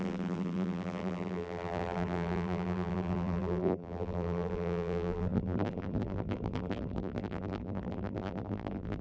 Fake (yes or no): yes